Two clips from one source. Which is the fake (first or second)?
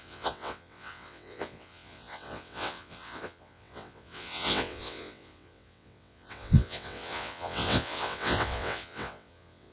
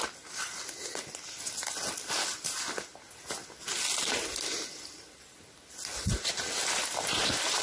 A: first